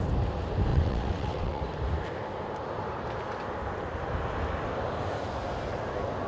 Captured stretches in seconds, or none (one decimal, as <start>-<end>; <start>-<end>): 0.0-0.7; 1.6-6.3